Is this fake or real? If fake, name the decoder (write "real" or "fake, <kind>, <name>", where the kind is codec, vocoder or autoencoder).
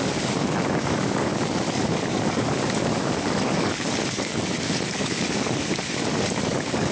fake, codec, DAC